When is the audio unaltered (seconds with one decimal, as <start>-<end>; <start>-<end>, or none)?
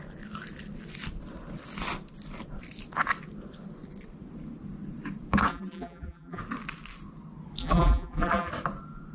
0.0-5.5; 6.4-7.6; 8.5-9.1